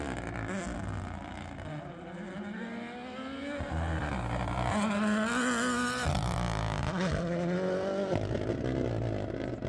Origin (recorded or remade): recorded